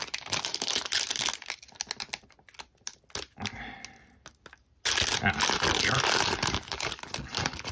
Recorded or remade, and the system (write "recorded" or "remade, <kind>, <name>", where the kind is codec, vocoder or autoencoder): recorded